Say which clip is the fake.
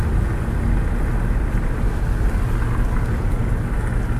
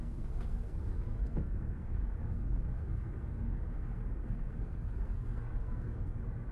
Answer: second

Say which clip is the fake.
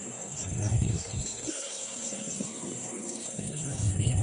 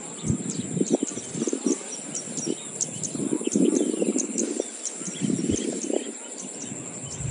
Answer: first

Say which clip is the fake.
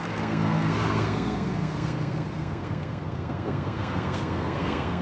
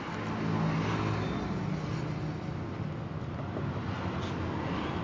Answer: first